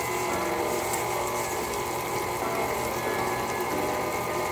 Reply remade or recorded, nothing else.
recorded